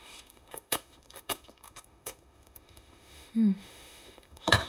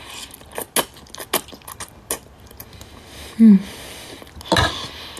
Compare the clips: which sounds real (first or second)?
second